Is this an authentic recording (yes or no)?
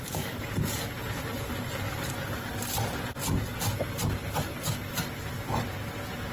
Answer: yes